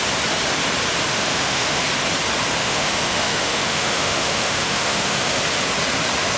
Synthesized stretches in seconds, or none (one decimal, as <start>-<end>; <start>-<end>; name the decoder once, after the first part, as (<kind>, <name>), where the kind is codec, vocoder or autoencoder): 1.0-1.8 (autoencoder, DAC-VAE); 2.6-5.4